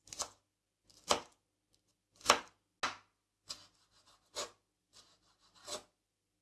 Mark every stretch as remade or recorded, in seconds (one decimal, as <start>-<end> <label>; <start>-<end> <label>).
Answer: 0.0-6.4 recorded